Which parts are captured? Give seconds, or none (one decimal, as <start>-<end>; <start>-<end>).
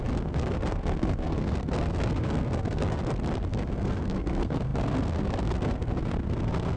3.0-3.5